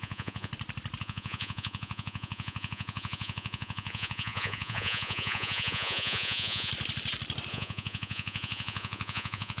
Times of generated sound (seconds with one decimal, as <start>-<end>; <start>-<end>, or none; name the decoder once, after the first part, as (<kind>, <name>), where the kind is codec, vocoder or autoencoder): 0.0-0.5 (vocoder, Vocos); 1.0-6.7; 7.5-9.6